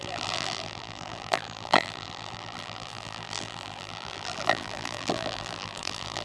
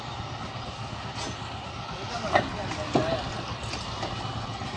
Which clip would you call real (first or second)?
second